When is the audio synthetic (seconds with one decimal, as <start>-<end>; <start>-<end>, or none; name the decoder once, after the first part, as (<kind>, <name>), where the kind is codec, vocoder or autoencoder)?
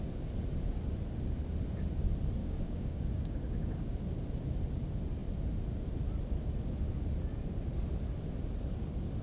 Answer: 2.4-4.0 (codec, DAC)